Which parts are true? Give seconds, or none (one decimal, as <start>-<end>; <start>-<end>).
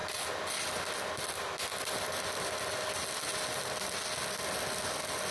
0.0-5.3